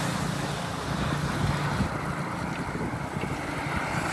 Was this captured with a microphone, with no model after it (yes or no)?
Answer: yes